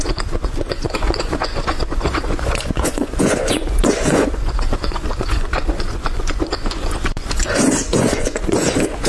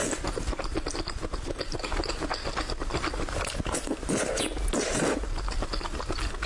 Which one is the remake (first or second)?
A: first